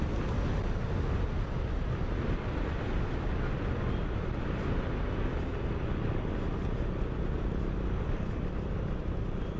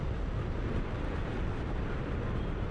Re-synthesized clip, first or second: second